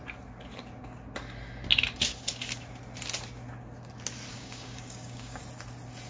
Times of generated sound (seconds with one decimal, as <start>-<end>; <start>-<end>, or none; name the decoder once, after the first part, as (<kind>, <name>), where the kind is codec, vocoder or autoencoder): 4.3-5.4 (codec, DAC)